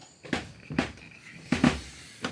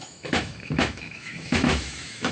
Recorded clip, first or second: first